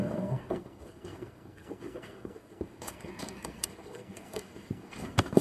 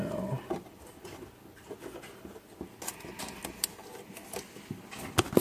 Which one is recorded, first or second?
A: second